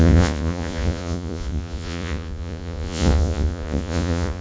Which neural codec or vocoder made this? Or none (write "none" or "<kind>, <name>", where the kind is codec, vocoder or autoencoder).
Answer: vocoder, Vocos